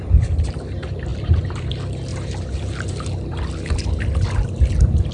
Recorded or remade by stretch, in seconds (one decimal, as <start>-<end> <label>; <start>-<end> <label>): 0.0-1.1 recorded; 1.1-1.7 remade; 1.7-2.1 recorded; 2.1-3.7 remade; 3.7-5.1 recorded